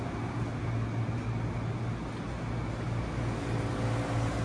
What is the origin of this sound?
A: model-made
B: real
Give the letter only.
B